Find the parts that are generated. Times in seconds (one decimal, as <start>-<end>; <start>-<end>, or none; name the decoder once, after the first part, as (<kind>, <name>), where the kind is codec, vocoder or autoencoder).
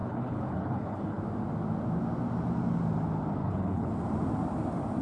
0.0-1.2 (codec, HILCodec); 3.4-3.9